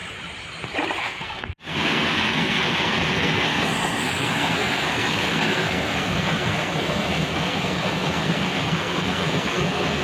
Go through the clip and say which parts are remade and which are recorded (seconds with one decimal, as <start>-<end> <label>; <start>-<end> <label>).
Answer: 0.0-1.0 recorded; 1.0-10.0 remade